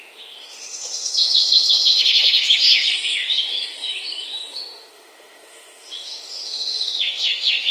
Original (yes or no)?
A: no